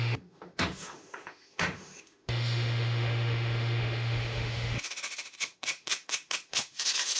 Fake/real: fake